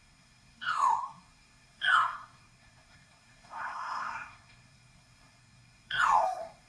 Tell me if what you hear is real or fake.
fake